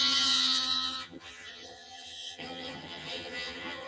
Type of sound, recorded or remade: remade